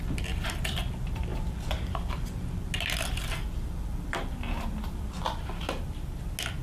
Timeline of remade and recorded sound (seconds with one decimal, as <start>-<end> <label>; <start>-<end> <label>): 0.0-6.6 recorded